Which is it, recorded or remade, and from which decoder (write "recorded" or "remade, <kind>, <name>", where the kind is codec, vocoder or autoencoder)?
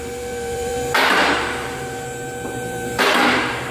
remade, vocoder, BigVGAN v2